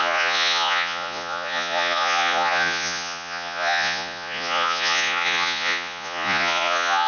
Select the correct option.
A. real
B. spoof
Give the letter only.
B